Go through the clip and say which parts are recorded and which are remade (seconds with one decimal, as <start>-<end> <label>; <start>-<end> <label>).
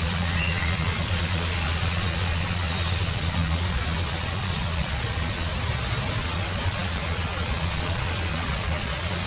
0.0-5.5 remade; 5.5-6.2 recorded; 6.2-9.3 remade